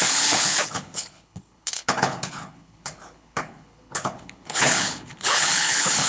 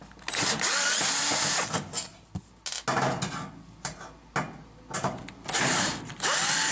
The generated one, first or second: first